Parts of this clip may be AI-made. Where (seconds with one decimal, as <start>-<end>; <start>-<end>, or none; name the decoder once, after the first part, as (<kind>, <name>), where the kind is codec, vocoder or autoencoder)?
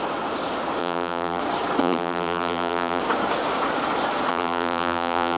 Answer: 0.8-1.4 (vocoder, BigVGAN v2); 1.8-3.0; 4.3-5.4